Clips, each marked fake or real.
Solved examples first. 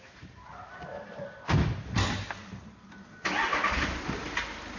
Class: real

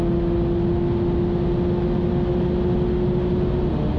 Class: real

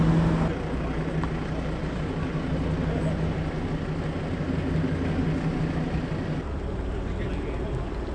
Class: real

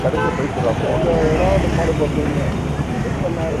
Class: real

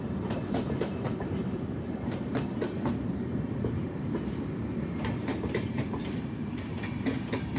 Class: fake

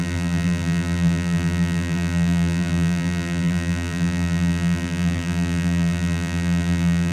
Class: fake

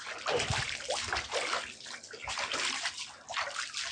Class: real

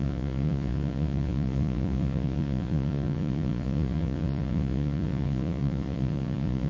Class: fake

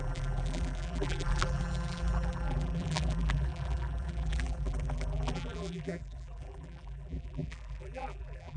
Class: fake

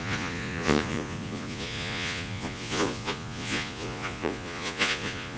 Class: fake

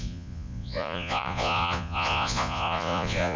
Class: fake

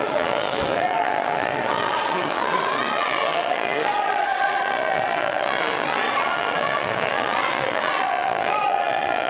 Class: fake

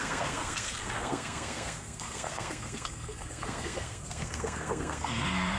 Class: fake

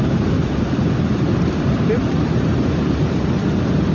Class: real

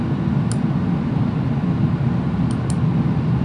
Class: real